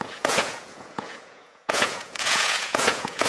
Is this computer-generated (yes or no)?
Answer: yes